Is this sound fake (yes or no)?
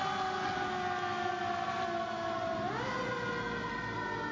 no